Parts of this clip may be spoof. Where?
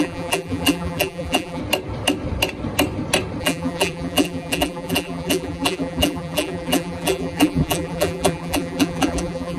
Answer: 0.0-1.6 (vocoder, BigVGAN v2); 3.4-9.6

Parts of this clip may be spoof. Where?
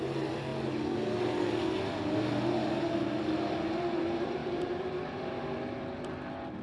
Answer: 0.0-0.5 (vocoder, BigVGAN v2); 3.7-6.6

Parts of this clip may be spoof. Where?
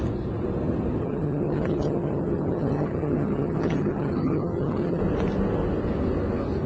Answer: 1.0-5.0 (vocoder, HiFi-GAN)